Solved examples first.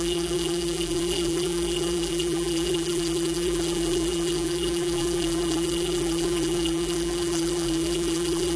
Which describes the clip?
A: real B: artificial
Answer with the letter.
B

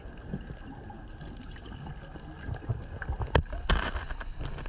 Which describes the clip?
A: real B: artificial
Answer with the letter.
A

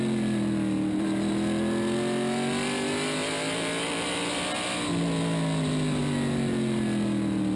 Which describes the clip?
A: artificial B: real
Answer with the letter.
B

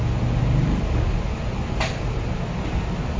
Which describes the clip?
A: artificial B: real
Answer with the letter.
B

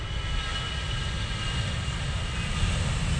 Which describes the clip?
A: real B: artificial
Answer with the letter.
A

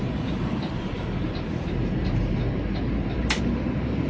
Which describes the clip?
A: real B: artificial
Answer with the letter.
B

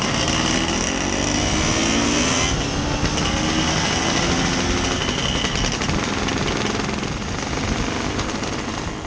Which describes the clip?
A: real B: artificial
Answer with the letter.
A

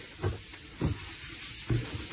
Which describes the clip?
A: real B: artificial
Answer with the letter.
A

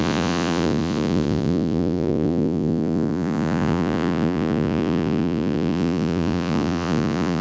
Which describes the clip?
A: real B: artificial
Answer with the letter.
B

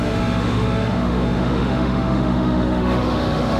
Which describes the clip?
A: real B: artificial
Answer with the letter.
B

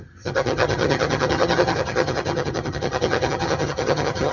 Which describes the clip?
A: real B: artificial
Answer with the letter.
B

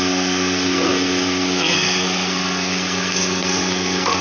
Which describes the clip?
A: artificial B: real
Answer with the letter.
A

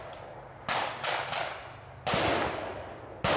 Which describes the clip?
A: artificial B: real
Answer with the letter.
B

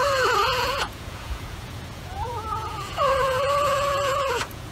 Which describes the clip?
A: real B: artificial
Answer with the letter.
B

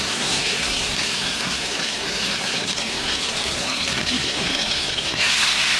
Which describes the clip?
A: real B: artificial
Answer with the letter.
B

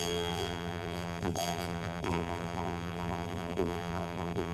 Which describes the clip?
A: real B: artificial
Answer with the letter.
B